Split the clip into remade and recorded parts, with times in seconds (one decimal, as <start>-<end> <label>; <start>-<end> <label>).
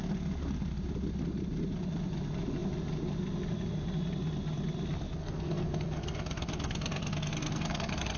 0.0-5.2 recorded; 5.2-8.2 remade